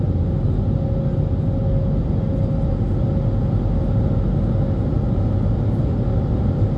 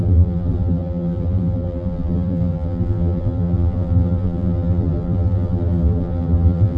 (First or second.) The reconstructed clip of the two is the second